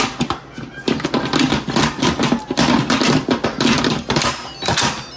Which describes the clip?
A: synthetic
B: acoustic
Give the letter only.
B